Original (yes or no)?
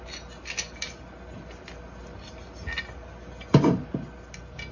yes